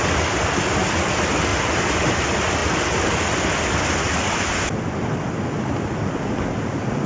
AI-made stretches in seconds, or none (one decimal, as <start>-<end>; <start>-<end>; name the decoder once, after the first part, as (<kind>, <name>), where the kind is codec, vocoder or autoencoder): 1.5-2.2 (vocoder, BigVGAN v2)